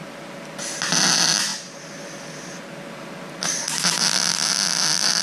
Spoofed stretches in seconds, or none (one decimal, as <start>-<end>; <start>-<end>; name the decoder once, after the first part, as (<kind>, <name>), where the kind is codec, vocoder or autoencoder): none